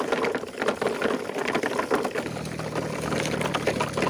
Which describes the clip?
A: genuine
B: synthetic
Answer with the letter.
A